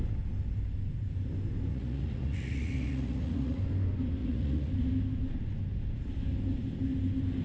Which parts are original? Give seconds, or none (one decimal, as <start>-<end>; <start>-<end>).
0.0-1.7; 3.6-4.2; 4.7-7.4